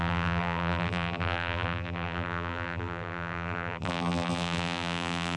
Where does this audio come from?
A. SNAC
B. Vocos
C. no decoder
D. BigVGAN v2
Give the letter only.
D